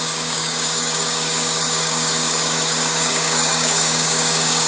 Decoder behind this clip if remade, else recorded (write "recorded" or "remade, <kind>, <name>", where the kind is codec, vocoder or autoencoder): remade, codec, DAC